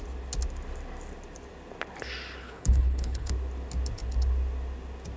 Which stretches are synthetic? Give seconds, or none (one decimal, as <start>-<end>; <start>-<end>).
2.4-3.3